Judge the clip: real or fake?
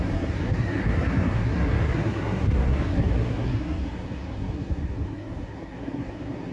fake